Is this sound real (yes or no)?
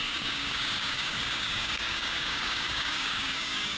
no